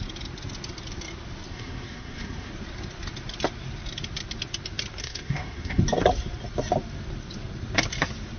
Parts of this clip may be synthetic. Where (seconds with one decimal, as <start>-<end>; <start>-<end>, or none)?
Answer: 1.5-2.5; 5.0-5.8